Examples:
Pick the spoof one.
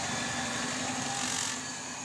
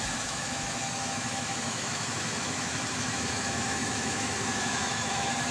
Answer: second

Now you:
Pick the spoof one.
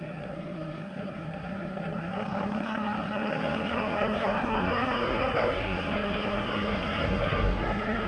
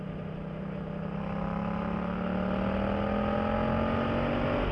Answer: first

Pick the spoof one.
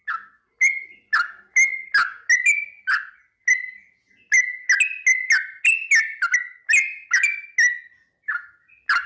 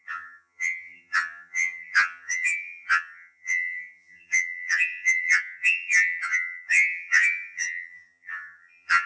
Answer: second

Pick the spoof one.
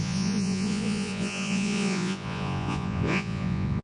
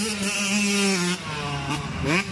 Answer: first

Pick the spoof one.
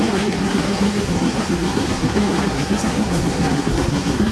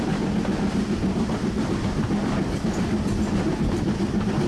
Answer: first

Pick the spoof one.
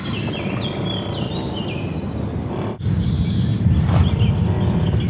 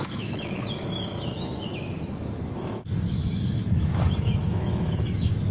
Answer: second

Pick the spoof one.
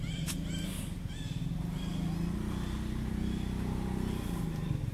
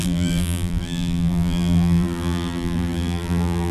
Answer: second